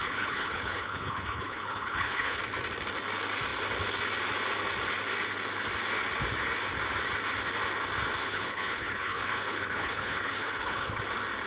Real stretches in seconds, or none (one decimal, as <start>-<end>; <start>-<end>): 2.4-8.2; 11.0-11.5